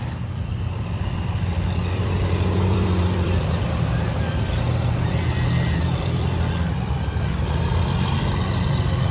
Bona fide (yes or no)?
no